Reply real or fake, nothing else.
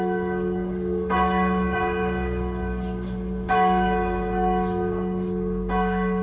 fake